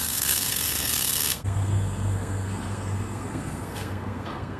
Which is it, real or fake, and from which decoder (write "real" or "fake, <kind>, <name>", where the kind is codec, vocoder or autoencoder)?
fake, codec, SNAC